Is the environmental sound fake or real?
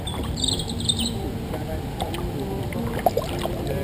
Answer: real